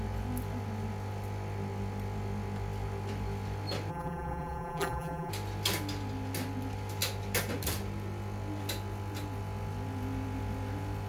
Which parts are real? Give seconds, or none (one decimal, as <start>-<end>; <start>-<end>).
0.0-3.9; 5.3-11.1